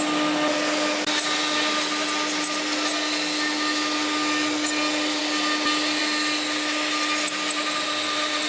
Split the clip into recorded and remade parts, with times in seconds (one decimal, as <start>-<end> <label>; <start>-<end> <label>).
0.0-8.5 recorded